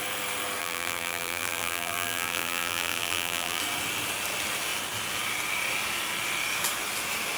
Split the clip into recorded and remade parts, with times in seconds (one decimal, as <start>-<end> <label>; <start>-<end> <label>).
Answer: 0.0-0.6 recorded; 0.6-3.6 remade; 3.6-7.4 recorded